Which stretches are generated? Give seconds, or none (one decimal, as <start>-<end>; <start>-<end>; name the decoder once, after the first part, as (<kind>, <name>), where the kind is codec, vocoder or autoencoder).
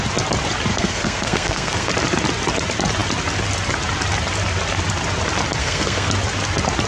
0.7-1.9 (codec, SNAC); 5.6-6.1